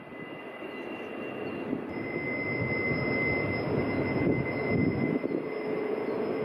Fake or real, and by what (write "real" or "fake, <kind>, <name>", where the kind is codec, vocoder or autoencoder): real